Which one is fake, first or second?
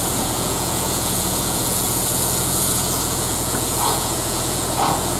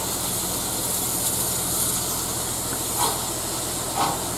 first